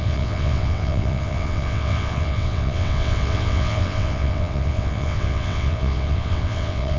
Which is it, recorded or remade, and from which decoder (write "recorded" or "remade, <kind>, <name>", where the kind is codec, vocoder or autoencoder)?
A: remade, vocoder, WaveNeXt